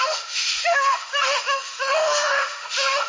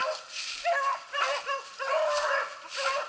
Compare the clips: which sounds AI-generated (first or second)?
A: first